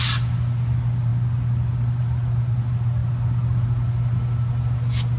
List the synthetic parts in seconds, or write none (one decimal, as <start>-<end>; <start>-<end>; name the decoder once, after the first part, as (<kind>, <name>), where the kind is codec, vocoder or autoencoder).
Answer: none

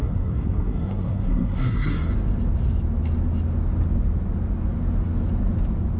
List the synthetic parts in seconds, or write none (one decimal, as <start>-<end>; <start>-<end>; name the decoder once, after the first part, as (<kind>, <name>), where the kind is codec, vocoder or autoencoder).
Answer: 0.0-2.1 (codec, SNAC)